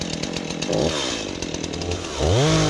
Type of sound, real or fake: real